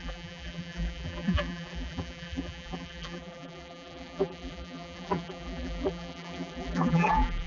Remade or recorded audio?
remade